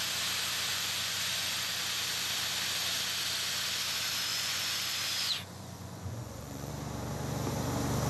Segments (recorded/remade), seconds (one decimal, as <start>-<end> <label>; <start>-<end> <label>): 0.0-0.7 recorded; 0.7-1.7 remade; 1.7-4.3 recorded; 4.3-6.7 remade; 6.7-8.1 recorded